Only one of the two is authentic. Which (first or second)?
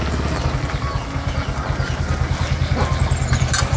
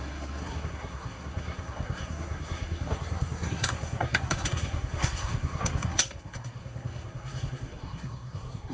first